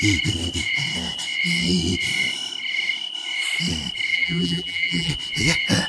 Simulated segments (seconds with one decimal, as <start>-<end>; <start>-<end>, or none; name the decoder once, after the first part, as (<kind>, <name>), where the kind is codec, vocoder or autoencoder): 4.1-5.1 (vocoder, BigVGAN v2)